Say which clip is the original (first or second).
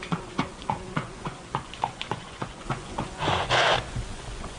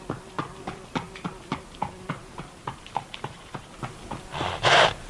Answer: second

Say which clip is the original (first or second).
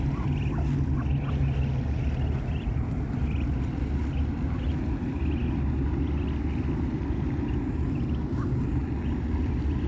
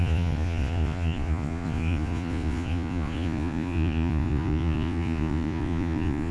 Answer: first